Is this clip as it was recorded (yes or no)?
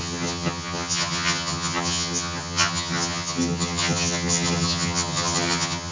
no